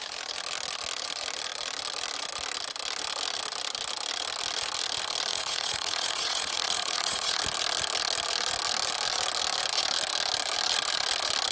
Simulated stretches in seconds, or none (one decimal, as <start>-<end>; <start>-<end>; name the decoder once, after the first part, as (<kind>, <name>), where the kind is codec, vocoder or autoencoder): 5.3-7.4 (vocoder, Vocos)